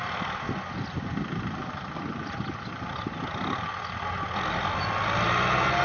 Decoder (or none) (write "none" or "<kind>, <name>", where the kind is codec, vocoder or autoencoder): none